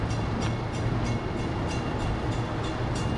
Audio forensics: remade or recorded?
recorded